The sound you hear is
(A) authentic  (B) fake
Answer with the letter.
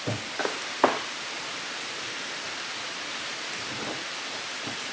B